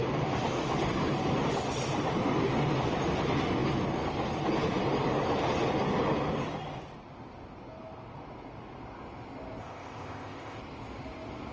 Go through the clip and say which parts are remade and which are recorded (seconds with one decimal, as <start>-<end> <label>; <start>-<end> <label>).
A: 0.0-9.6 recorded; 9.6-10.6 remade; 10.6-11.5 recorded